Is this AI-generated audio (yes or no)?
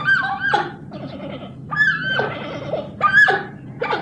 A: no